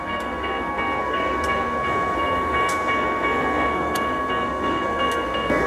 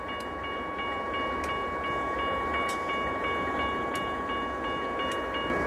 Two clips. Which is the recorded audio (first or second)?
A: second